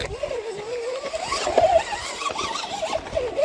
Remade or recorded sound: recorded